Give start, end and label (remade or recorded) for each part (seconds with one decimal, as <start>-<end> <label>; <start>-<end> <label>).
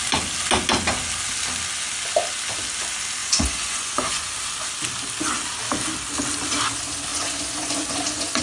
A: 0.0-3.2 recorded; 3.2-4.3 remade; 4.3-7.1 recorded; 7.1-8.4 remade